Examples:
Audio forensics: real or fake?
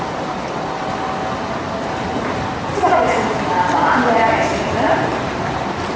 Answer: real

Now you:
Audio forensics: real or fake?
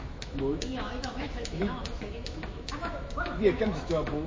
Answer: fake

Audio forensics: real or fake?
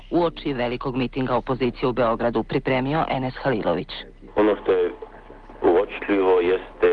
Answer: real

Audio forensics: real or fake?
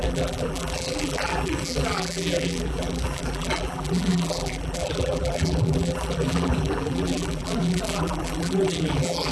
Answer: fake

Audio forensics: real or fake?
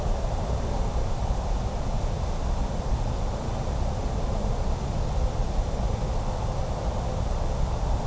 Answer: real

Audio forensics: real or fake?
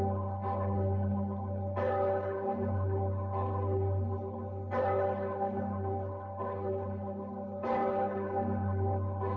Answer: fake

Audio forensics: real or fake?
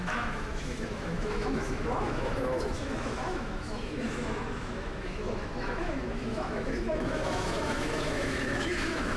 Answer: fake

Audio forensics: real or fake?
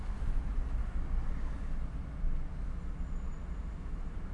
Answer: real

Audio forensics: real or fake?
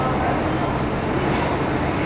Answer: real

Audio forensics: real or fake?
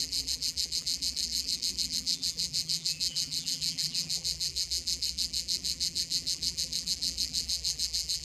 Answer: fake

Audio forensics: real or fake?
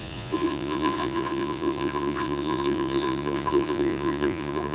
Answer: fake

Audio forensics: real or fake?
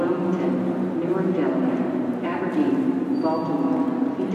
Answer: real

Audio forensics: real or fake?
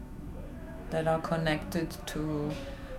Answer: fake